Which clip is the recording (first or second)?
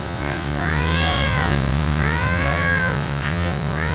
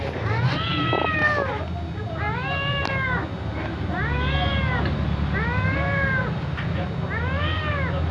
second